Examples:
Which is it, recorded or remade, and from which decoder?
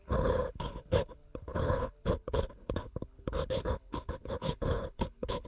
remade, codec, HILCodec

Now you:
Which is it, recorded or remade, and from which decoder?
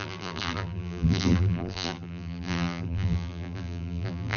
remade, vocoder, BigVGAN v2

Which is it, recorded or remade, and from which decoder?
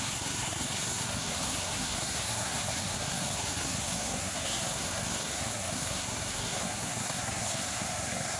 remade, codec, SNAC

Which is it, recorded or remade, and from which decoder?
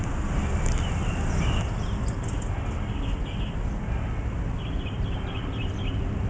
recorded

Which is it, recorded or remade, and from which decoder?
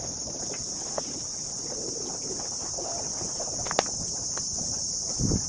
recorded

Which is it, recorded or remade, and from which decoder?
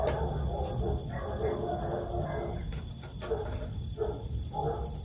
recorded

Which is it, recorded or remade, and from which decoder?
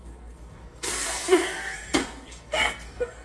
remade, codec, SNAC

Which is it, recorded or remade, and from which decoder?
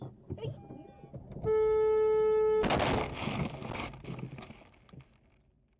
recorded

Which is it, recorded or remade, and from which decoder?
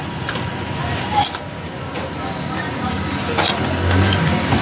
recorded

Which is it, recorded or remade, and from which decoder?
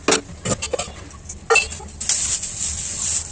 recorded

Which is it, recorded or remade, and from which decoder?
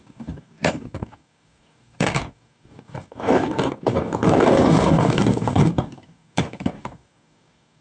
remade, codec, DAC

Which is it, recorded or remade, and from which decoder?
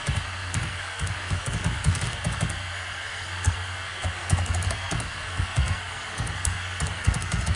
remade, codec, SNAC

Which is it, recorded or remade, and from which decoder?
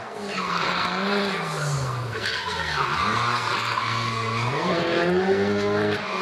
remade, codec, SNAC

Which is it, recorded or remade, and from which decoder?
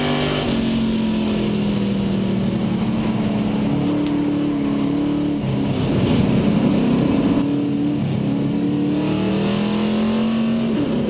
recorded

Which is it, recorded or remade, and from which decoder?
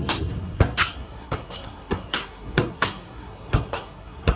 remade, codec, SNAC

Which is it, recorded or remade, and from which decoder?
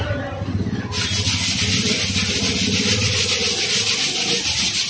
recorded